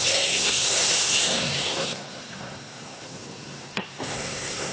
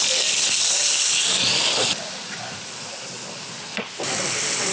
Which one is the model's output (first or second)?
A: first